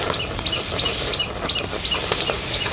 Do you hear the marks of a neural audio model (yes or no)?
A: no